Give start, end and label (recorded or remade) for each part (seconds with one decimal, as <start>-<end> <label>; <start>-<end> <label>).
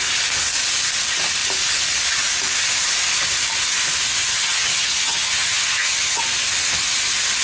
0.0-4.3 recorded; 4.3-6.2 remade; 6.2-7.4 recorded